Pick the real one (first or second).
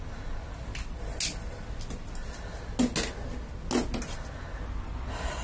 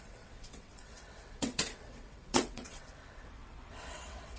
first